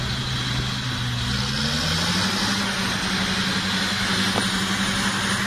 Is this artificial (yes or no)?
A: no